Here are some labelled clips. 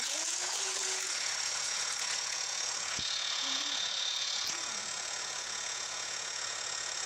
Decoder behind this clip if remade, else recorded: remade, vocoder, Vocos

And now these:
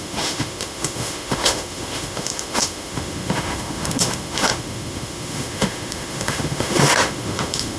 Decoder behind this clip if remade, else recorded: remade, autoencoder, DAC-VAE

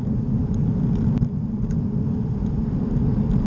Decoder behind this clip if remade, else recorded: recorded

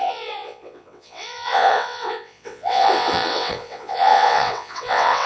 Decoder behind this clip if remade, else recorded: remade, vocoder, WaveNeXt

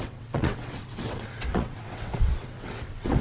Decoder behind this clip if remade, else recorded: remade, vocoder, WaveNeXt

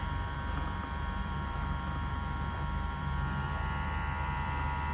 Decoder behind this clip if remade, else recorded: remade, vocoder, BigVGAN v2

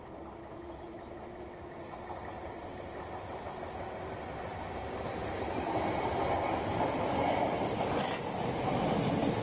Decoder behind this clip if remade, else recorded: recorded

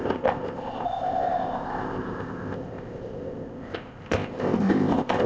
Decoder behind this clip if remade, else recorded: remade, codec, ZipCodec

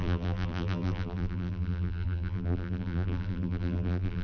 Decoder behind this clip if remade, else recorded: remade, vocoder, BigVGAN v2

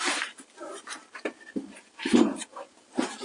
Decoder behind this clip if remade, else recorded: remade, vocoder, BigVGAN v2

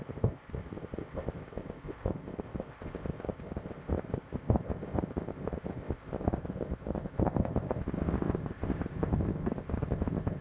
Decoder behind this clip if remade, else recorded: remade, codec, ZipCodec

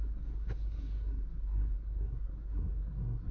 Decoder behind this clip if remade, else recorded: remade, codec, SNAC